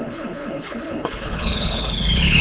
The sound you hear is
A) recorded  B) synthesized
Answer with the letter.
B